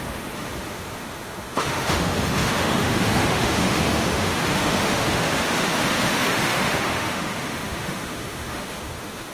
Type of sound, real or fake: fake